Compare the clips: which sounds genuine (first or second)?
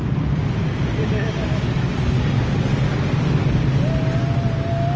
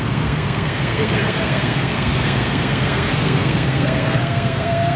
first